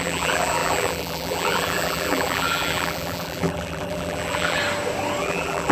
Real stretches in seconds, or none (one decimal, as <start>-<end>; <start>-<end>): 4.6-5.2